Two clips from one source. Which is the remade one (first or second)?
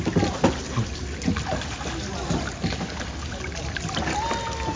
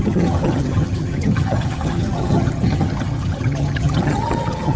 second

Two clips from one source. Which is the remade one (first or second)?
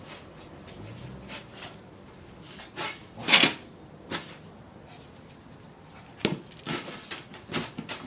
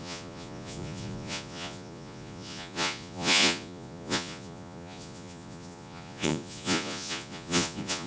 second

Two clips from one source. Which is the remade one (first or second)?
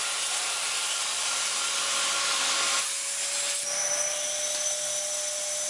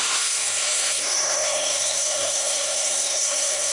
second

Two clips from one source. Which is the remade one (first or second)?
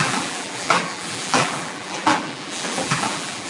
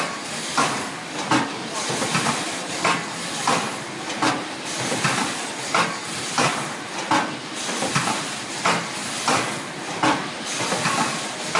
first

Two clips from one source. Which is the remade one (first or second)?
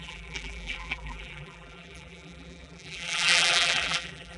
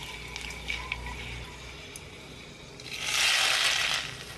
first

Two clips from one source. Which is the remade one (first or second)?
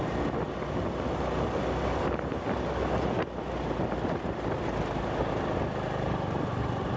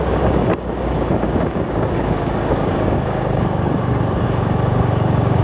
second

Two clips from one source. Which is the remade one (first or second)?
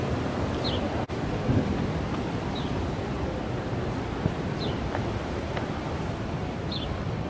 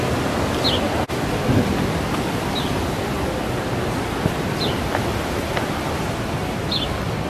first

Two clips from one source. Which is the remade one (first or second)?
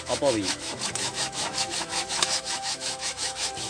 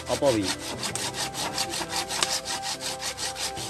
first